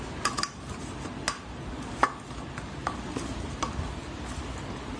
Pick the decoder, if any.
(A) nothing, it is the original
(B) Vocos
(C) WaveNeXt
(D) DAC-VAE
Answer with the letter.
A